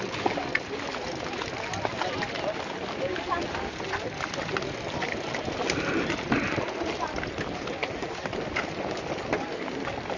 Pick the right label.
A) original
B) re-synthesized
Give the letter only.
A